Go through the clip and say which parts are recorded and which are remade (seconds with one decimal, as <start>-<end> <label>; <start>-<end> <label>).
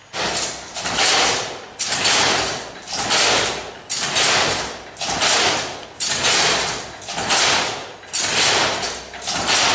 0.0-9.7 recorded